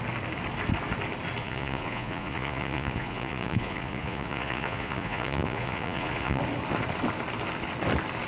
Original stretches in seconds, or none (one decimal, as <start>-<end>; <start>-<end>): 0.0-1.4; 6.4-8.3